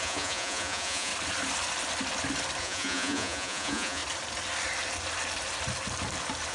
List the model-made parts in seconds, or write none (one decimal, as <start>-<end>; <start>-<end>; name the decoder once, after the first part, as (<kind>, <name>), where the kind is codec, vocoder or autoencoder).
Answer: 0.0-1.1 (vocoder, Vocos); 2.6-4.0